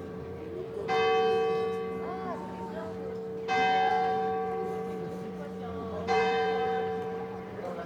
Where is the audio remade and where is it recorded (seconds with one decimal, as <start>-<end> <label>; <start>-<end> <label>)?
0.0-0.4 remade; 0.4-3.9 recorded; 3.9-7.9 remade